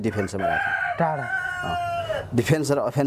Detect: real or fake real